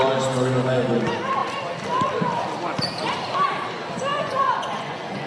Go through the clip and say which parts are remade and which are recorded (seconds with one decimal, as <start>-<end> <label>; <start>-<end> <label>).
0.0-4.1 recorded; 4.1-5.3 remade